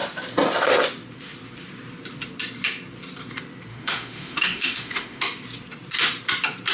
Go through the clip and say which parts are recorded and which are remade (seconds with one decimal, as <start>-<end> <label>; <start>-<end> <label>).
0.0-3.7 recorded; 3.7-5.2 remade; 5.2-6.7 recorded